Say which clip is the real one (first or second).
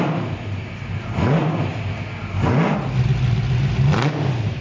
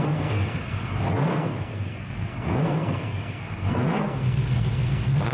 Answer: first